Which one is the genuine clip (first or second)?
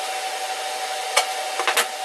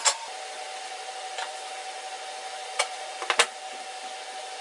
first